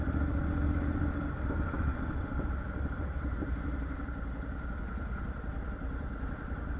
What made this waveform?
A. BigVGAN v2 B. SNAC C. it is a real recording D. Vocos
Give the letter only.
A